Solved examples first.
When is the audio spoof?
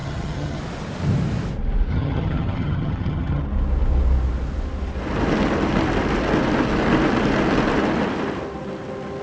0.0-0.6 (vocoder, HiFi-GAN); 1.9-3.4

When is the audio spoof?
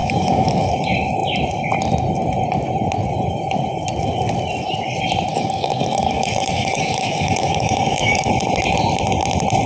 0.0-0.7 (codec, DAC); 5.3-8.3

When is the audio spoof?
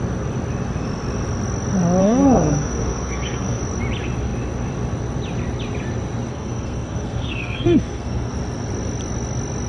2.0-3.6 (codec, SNAC); 6.3-8.3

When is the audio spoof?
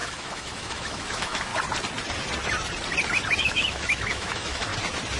0.0-1.5 (autoencoder, DAC-VAE); 3.4-4.7